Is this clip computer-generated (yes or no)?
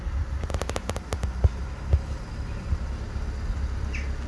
no